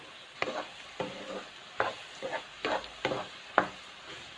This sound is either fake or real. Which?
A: real